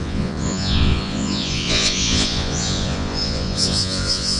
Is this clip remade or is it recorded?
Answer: remade